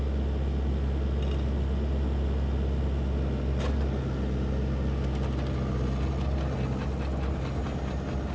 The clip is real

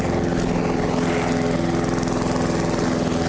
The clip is real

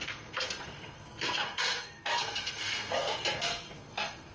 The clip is fake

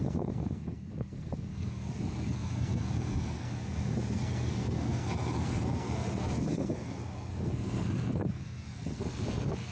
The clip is fake